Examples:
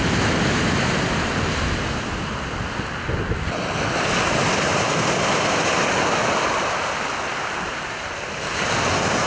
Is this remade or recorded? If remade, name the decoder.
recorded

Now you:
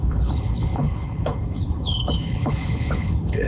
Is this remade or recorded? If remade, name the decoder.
remade, codec, HILCodec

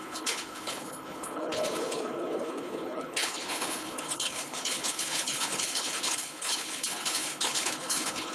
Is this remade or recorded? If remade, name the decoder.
remade, codec, HILCodec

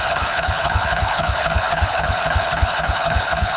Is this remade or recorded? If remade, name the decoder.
remade, codec, HILCodec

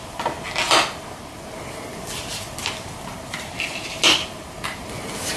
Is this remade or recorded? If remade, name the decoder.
recorded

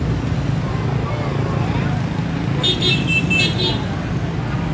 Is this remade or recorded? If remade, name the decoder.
recorded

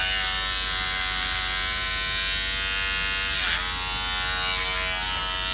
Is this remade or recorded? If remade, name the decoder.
recorded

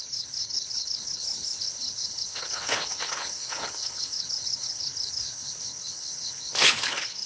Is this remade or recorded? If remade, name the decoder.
remade, codec, HILCodec